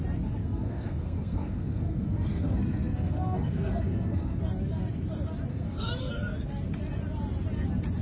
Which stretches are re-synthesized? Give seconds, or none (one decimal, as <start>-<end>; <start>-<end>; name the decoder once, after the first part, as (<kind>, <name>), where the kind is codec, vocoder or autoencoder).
0.4-4.4 (codec, SNAC); 5.5-6.0